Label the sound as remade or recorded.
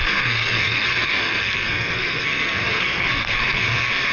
remade